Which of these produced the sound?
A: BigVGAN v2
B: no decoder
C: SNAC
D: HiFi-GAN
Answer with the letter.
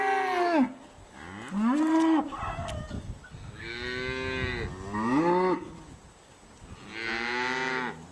B